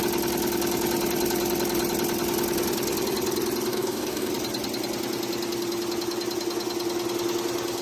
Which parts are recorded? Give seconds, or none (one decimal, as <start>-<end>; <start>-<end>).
0.0-3.7; 4.3-7.8